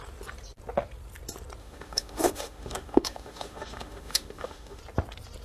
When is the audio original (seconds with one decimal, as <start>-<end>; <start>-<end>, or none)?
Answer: 0.0-1.6; 4.8-5.4